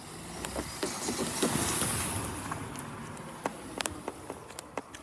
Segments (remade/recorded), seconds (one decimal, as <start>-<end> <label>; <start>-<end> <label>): 0.0-5.0 recorded